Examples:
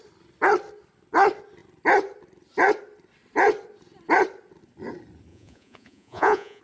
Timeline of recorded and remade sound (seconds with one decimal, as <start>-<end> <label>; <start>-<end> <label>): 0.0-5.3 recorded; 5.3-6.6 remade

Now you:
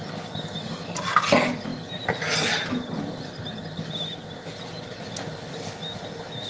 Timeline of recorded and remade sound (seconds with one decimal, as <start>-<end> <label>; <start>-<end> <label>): 0.0-6.5 recorded

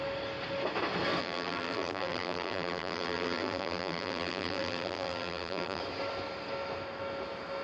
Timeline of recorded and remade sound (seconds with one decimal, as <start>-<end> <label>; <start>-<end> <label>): 0.0-1.2 recorded; 1.2-5.8 remade; 5.8-7.6 recorded

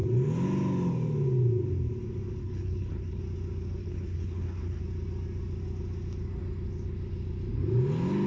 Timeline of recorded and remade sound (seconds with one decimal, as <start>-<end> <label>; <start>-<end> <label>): 0.0-2.4 recorded; 2.4-3.2 remade; 3.2-3.8 recorded; 3.8-4.8 remade; 4.8-8.3 recorded

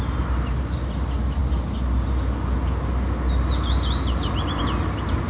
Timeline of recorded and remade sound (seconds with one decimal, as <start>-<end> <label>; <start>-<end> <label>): 0.0-5.3 recorded

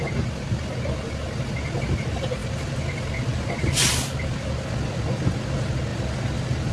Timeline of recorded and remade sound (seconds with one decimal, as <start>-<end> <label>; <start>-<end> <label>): 0.0-6.7 recorded

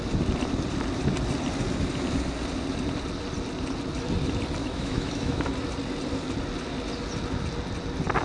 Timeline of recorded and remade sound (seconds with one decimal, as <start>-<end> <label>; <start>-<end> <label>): 0.0-4.6 recorded; 4.6-5.5 remade; 5.5-8.2 recorded